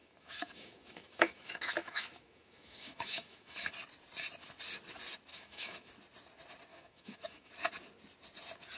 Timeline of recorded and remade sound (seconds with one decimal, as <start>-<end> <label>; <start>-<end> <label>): 0.0-3.7 remade; 3.7-5.3 recorded; 5.3-5.9 remade; 5.9-6.7 recorded; 6.7-7.5 remade; 7.5-8.8 recorded